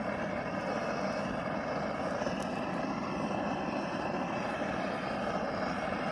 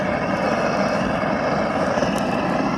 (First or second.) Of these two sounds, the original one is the first